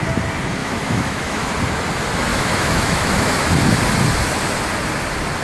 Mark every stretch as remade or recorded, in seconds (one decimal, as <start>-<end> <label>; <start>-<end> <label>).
0.0-0.6 recorded; 0.6-1.5 remade; 1.5-2.3 recorded; 2.3-3.5 remade; 3.5-5.4 recorded